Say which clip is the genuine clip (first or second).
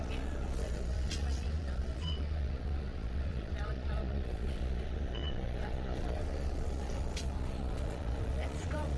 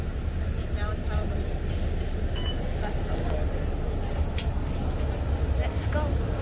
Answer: second